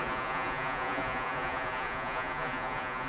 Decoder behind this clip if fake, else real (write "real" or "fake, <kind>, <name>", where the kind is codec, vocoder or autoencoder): fake, vocoder, Vocos